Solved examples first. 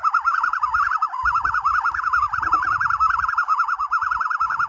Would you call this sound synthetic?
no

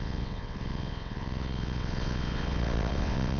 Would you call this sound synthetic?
yes